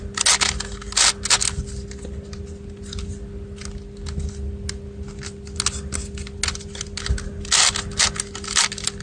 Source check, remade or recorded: recorded